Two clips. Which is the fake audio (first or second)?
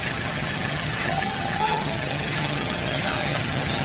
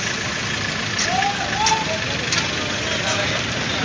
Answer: first